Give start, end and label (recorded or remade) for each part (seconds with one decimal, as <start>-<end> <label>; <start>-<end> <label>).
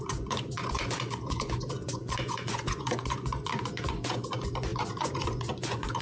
0.0-6.0 remade